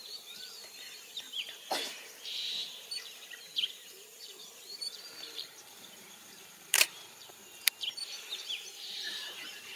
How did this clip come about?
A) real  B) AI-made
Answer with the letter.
B